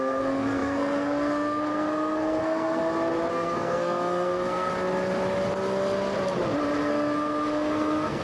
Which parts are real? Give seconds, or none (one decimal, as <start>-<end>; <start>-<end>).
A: 2.8-3.3; 4.7-6.8